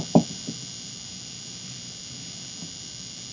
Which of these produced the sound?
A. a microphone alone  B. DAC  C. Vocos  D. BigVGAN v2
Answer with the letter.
D